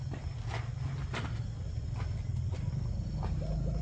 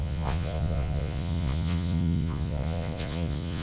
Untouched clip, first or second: first